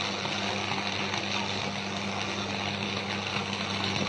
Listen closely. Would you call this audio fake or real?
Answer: real